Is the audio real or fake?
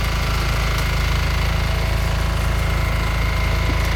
real